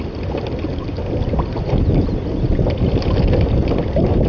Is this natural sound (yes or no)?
yes